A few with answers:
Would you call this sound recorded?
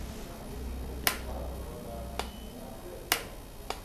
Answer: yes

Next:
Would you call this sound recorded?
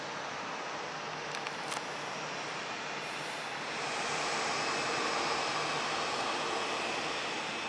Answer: yes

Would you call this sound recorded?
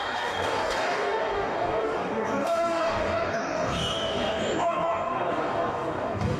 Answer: no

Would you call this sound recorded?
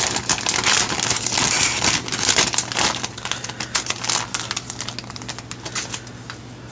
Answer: yes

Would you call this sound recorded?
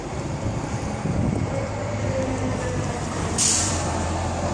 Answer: no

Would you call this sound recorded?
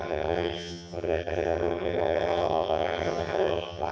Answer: no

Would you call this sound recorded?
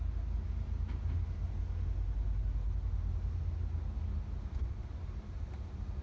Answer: yes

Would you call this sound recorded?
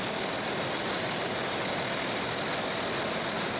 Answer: yes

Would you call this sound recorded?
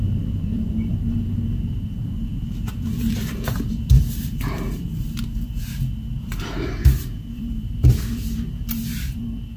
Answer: no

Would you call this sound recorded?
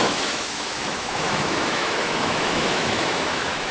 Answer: no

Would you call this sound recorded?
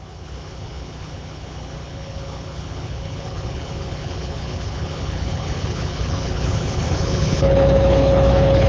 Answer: no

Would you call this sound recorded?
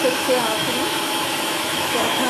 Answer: no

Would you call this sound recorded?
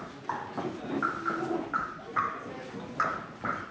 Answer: yes